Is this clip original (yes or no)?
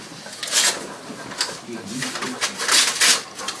yes